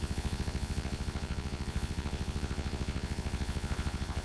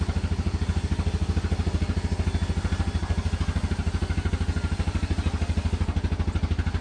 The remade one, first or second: first